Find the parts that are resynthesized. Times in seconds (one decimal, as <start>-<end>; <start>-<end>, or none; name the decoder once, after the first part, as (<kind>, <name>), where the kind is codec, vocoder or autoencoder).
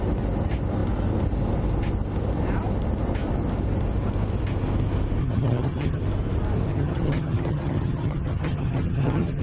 5.2-6.0 (vocoder, HiFi-GAN); 6.7-9.4